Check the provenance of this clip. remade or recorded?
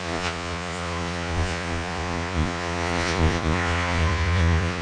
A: remade